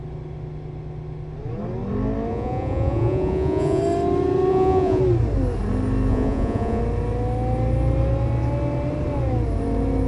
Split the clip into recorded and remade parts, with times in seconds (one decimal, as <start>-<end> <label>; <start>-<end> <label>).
0.0-2.3 recorded; 2.3-3.8 remade; 3.8-4.5 recorded; 4.5-5.0 remade; 5.0-6.1 recorded; 6.1-6.8 remade; 6.8-10.1 recorded